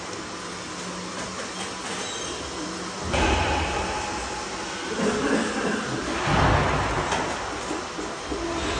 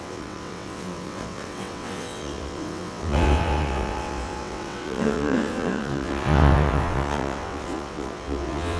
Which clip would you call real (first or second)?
first